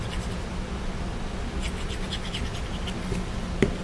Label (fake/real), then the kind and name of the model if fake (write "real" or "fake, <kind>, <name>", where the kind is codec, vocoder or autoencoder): real